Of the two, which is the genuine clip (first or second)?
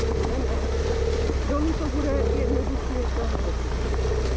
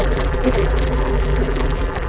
first